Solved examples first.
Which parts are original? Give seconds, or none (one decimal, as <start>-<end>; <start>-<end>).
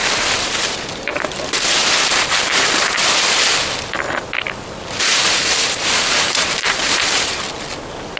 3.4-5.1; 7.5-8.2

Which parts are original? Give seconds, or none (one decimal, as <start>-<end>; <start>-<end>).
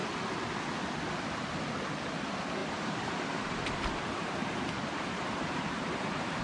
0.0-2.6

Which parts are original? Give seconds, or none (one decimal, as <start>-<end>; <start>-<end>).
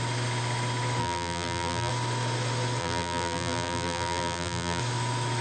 0.0-1.0; 1.9-2.8; 4.8-5.4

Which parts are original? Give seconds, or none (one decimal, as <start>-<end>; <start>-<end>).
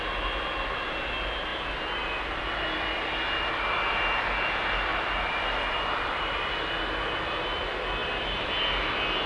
0.0-4.9; 6.5-8.0; 8.6-9.3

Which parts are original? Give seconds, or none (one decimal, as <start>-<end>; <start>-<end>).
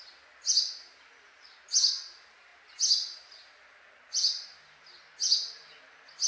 0.0-6.3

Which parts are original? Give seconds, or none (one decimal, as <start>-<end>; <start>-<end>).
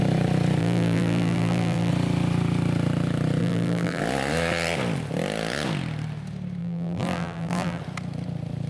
0.0-0.6; 1.9-3.4; 4.0-6.6; 7.8-8.7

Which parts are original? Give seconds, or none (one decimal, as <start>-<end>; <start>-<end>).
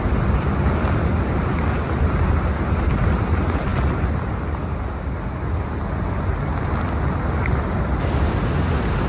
0.0-9.1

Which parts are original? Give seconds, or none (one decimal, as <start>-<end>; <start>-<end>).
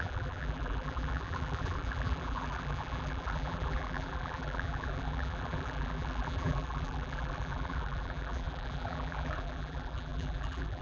none